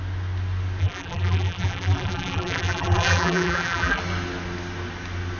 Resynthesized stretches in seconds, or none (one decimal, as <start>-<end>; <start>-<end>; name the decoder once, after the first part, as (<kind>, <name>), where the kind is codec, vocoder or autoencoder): 0.8-4.0 (vocoder, BigVGAN v2)